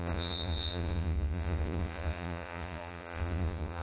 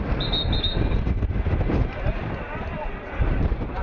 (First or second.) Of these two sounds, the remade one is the first